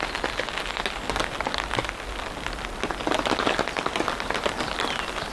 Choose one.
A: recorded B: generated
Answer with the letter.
A